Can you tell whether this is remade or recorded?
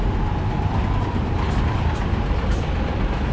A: recorded